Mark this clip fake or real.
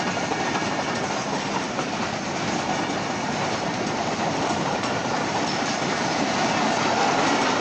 real